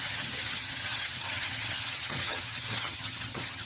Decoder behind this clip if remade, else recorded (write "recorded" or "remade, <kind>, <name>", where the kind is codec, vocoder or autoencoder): remade, vocoder, HiFi-GAN